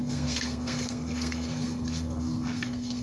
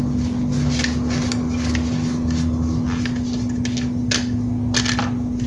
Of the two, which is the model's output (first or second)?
first